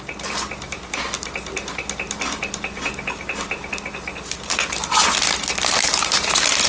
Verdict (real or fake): real